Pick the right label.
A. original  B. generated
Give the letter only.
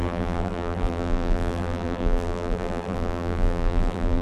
B